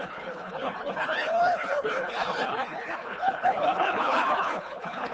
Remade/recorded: remade